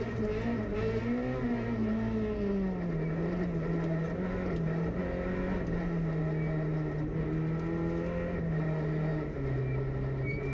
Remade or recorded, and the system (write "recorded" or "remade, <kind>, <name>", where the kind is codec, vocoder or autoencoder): recorded